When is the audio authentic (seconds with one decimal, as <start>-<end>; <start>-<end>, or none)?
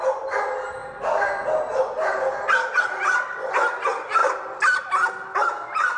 0.0-6.0